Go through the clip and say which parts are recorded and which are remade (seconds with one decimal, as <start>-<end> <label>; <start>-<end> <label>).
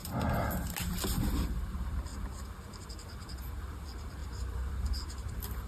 0.0-0.8 recorded; 0.8-5.7 remade